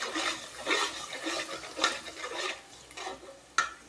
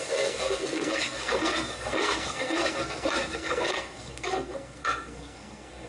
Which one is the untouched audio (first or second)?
first